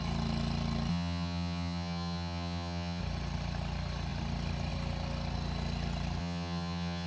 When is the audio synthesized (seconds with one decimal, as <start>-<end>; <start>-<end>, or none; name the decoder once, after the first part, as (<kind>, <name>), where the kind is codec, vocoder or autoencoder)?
0.9-3.0 (vocoder, HiFi-GAN); 6.2-7.1